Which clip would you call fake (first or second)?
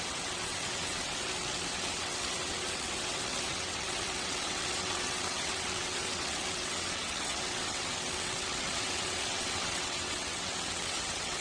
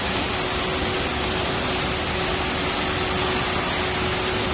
first